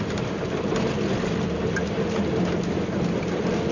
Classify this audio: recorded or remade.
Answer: recorded